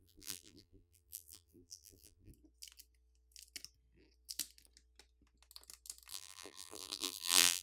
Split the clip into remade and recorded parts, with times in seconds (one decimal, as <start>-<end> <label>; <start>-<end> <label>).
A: 0.0-2.3 remade; 2.3-6.1 recorded; 6.1-7.6 remade